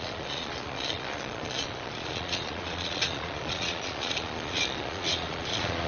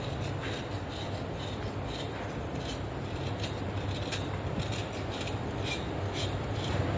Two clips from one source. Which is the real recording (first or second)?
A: second